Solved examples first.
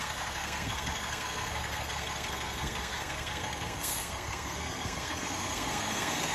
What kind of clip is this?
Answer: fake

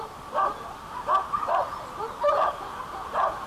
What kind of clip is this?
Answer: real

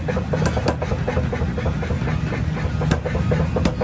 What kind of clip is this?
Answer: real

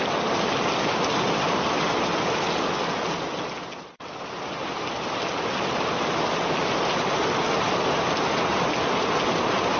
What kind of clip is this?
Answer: real